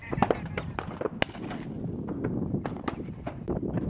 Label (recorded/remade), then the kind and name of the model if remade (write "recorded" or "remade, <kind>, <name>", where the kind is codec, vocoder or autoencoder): recorded